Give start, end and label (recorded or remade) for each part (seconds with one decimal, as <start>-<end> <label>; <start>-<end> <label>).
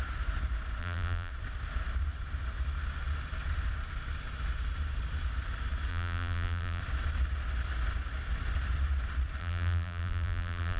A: 0.0-0.8 recorded; 0.8-1.3 remade; 1.3-5.9 recorded; 5.9-6.8 remade; 6.8-9.4 recorded; 9.4-10.8 remade